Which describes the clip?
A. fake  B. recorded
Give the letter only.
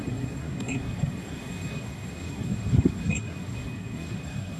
A